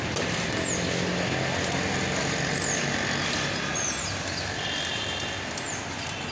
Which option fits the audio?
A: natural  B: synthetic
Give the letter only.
A